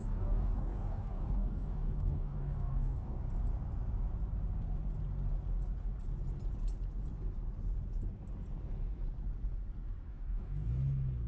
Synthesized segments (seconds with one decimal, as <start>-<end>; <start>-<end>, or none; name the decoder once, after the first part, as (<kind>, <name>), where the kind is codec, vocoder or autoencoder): 0.0-3.2 (codec, DAC); 10.1-10.7